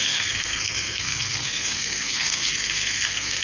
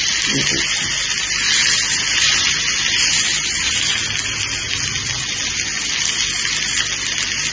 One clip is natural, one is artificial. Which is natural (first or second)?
second